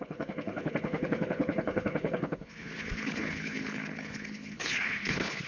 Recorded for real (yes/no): no